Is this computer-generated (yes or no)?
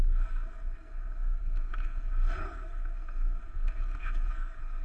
yes